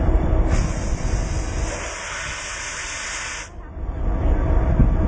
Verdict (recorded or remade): recorded